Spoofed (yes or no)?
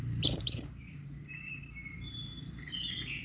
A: yes